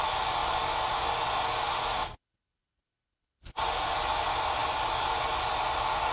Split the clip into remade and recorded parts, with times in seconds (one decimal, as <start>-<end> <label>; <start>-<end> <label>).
0.0-6.1 recorded